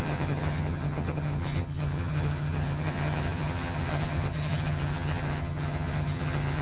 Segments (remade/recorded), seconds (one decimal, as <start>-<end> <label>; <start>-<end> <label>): 0.0-6.6 remade